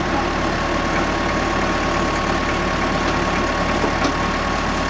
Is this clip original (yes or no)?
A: yes